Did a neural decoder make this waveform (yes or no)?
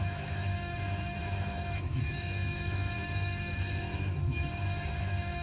yes